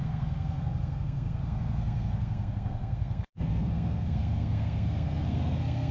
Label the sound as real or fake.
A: fake